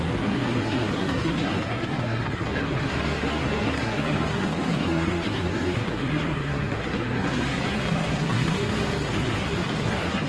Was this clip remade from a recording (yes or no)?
yes